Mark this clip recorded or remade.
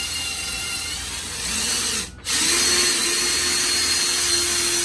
recorded